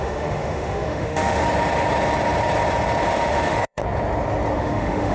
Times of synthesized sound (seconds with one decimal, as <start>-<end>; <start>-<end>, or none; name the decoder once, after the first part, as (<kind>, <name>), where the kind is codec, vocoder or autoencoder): 0.0-1.4 (autoencoder, DAC-VAE); 3.1-3.8; 4.6-5.1